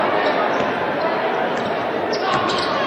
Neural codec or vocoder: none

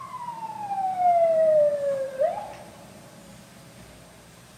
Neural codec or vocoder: vocoder, BigVGAN v2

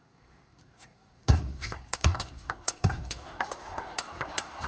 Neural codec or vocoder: codec, SNAC